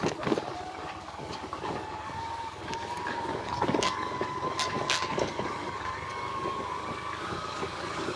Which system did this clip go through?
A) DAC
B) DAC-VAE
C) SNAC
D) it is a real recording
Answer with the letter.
A